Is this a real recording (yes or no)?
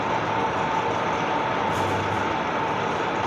yes